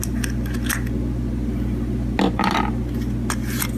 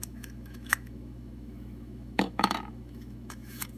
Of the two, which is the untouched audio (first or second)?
first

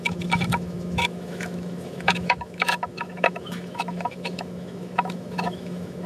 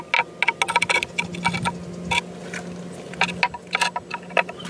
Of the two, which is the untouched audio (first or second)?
second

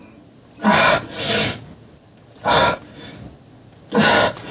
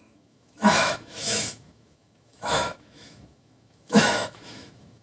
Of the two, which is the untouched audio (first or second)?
first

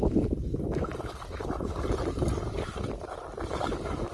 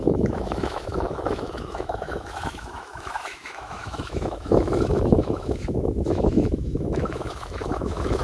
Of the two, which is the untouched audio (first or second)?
first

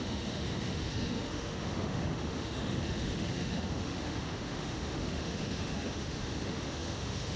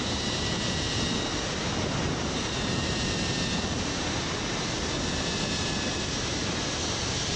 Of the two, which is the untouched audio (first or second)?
second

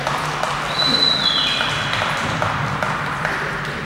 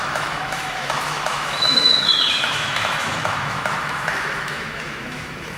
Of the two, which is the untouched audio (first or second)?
first